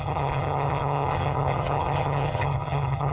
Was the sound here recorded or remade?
remade